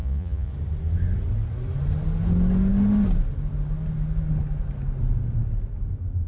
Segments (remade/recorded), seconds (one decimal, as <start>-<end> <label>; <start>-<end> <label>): 0.0-0.5 remade; 0.5-6.3 recorded